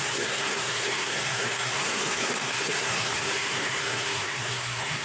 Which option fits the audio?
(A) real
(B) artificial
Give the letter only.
B